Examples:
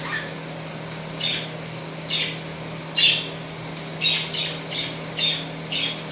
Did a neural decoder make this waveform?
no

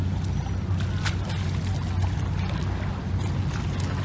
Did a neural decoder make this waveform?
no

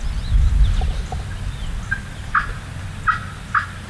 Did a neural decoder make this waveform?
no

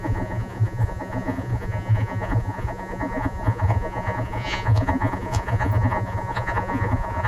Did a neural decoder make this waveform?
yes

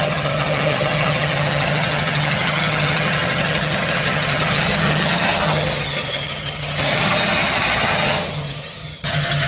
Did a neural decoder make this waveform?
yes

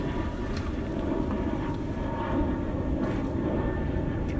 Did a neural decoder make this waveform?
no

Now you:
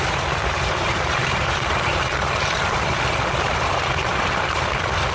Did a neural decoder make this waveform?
yes